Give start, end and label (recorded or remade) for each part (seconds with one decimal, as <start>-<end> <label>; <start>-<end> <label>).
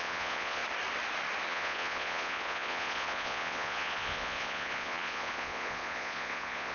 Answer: 0.0-0.6 remade; 0.6-1.5 recorded; 1.5-6.7 remade